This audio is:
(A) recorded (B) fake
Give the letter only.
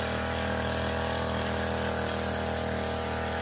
A